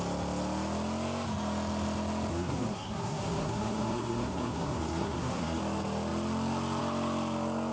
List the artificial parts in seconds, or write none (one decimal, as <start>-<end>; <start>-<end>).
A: 2.3-5.6

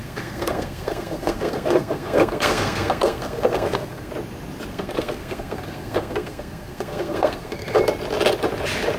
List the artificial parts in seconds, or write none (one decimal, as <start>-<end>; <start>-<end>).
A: 0.0-4.1; 4.7-7.8

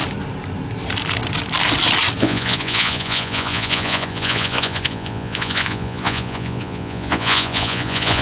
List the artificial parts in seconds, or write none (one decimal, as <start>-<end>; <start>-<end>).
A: 2.2-8.2

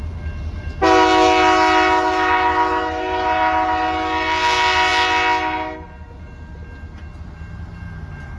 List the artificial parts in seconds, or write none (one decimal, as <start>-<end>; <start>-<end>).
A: none

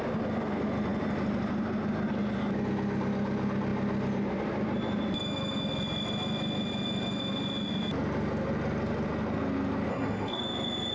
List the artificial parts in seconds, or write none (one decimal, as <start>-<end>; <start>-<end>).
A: 9.9-10.4